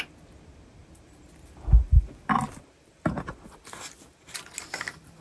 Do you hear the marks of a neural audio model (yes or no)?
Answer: no